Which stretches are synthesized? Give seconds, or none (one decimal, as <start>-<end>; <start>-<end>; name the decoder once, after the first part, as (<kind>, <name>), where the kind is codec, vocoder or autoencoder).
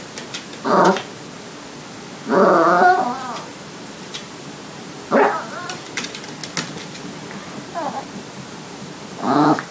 0.0-0.9 (vocoder, BigVGAN v2); 3.0-3.5; 4.4-6.4; 7.3-9.7